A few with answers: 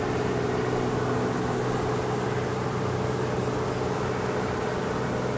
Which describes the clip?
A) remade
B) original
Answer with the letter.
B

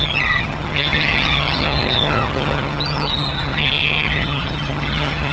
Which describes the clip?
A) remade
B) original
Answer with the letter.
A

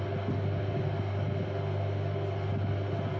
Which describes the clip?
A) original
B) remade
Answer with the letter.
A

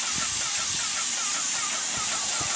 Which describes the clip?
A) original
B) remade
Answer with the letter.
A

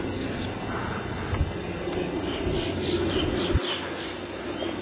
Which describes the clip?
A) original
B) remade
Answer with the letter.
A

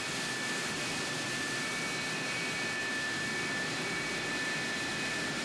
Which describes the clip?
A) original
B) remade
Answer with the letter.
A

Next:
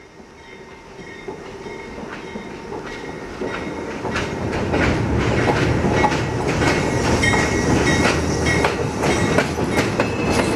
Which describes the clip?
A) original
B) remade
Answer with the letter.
A